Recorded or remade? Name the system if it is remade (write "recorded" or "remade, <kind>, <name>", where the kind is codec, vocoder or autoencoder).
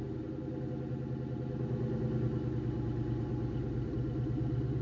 recorded